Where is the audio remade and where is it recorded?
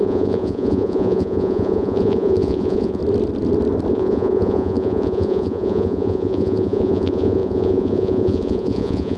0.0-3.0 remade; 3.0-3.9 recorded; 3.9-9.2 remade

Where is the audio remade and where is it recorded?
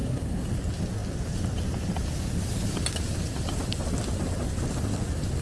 0.0-0.5 remade; 0.5-5.4 recorded